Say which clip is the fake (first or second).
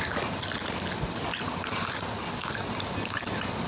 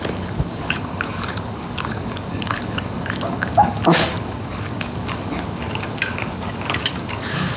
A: second